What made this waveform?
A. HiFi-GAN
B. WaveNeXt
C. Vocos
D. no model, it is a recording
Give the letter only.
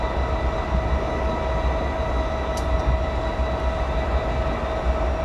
D